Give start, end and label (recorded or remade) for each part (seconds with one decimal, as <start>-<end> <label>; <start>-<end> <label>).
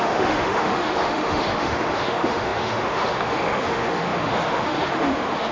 0.0-5.5 remade